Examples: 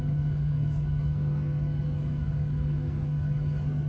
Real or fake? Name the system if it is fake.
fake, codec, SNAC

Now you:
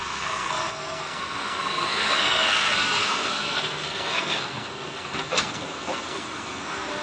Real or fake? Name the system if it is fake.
fake, codec, SNAC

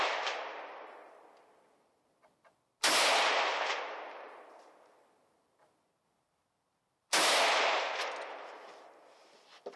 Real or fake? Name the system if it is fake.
real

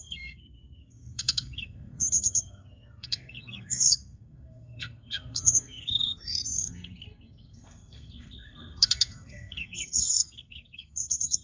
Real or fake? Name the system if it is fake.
fake, codec, SNAC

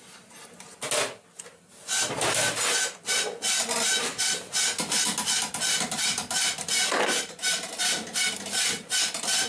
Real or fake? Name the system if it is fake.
real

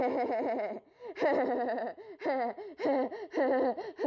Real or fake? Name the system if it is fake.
real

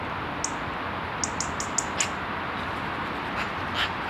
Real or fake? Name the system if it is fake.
real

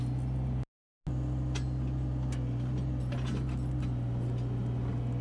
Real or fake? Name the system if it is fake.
real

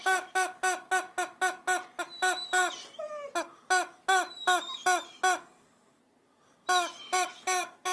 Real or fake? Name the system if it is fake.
real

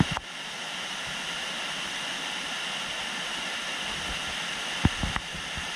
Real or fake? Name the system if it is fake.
real